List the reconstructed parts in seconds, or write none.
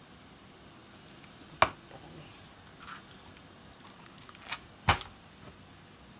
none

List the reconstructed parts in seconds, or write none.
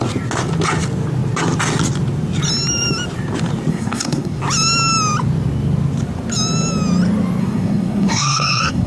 3.7-4.4 (codec, SNAC); 7.4-8.9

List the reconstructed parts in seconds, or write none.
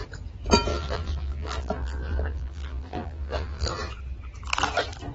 0.7-3.8 (vocoder, BigVGAN v2)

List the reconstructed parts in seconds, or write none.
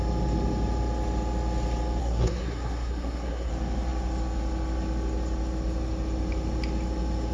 2.0-3.5 (codec, SNAC)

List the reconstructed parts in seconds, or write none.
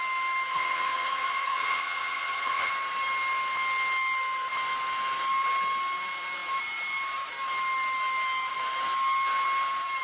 0.5-2.7 (vocoder, HiFi-GAN)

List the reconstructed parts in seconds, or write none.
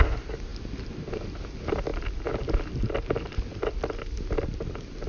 none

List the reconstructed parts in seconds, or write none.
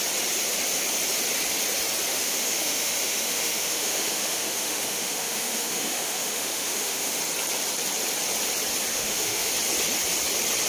2.1-7.2 (autoencoder, DAC-VAE); 8.9-9.5